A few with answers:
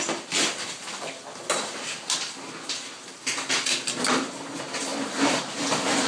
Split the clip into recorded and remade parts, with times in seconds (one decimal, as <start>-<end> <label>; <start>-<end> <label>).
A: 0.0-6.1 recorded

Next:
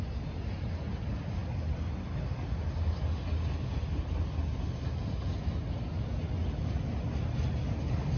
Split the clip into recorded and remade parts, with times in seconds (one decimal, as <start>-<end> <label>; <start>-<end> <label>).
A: 0.0-8.2 recorded

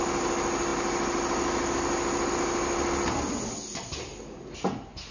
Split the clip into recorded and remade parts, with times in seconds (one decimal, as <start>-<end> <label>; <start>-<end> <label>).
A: 0.0-5.1 recorded